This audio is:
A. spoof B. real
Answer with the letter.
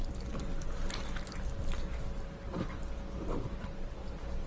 B